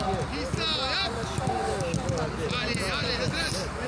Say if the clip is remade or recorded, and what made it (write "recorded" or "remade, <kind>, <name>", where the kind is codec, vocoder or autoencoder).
recorded